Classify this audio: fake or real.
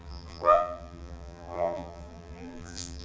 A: fake